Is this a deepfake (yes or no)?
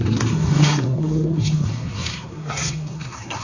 yes